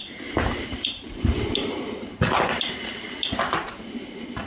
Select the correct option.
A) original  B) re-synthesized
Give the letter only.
A